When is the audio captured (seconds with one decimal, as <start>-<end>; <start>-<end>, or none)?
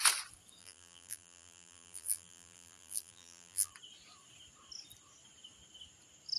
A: 0.0-0.6; 3.7-6.4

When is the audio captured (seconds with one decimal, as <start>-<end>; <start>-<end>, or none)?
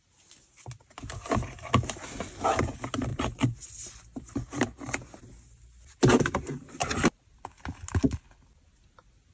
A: 0.0-3.1; 5.2-6.8; 7.4-9.3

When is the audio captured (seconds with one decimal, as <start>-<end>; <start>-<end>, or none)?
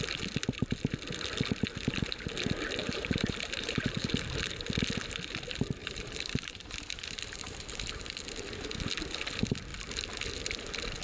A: 0.0-2.8; 4.1-5.8; 7.9-11.0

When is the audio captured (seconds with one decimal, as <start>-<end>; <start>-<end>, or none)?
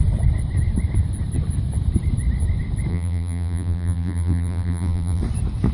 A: 0.0-2.9; 5.2-5.7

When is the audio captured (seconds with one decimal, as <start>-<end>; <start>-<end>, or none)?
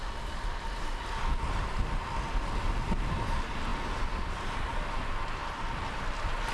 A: 1.6-5.4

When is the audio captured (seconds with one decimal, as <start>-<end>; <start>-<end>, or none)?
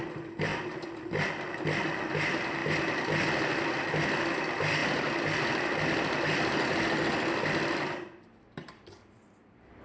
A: 0.0-0.5; 1.2-2.6; 4.0-4.8